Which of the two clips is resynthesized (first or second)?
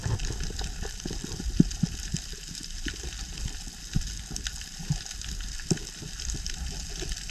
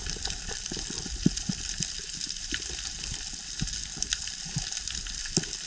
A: second